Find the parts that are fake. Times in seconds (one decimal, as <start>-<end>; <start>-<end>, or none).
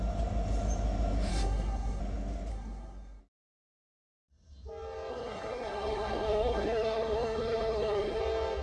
1.3-2.0; 2.5-3.2; 5.1-8.2